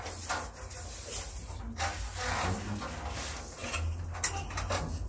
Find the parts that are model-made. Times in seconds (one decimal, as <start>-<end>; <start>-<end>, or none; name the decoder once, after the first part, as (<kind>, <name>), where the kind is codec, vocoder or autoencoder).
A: none